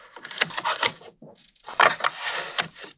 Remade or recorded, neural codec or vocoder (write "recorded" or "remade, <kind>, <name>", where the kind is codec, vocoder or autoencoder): recorded